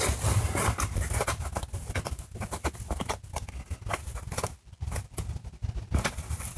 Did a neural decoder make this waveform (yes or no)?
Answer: no